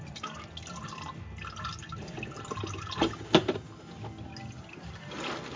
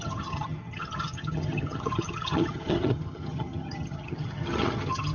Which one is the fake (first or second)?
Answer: second